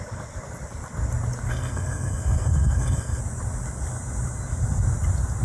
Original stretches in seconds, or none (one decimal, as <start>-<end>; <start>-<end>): 0.0-1.5; 3.2-5.4